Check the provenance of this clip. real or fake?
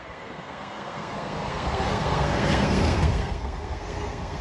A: fake